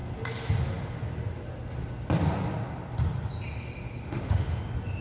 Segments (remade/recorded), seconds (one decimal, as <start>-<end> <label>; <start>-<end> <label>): 0.0-4.0 recorded; 4.0-4.6 remade; 4.6-5.0 recorded